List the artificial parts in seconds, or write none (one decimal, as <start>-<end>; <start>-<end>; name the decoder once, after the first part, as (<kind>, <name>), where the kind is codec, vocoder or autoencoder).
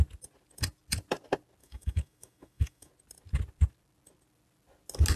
1.6-2.9 (autoencoder, DAC-VAE)